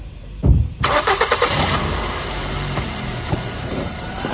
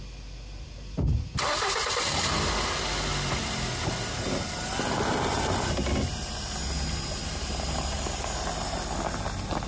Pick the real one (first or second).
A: second